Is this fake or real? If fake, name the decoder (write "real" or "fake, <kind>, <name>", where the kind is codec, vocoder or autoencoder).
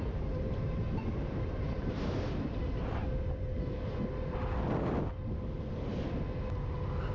real